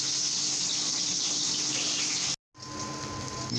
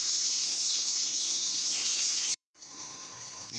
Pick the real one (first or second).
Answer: first